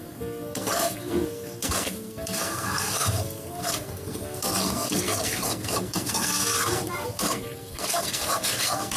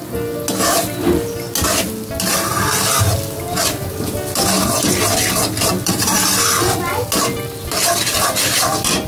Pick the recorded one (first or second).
second